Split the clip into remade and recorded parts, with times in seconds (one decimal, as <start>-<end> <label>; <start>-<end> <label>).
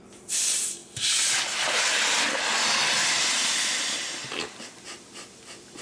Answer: 0.0-5.8 recorded